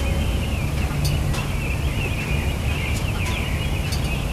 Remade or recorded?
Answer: recorded